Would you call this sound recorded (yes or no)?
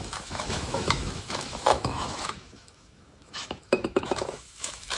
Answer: no